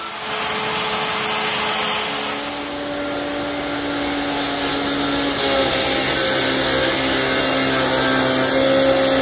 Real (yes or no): yes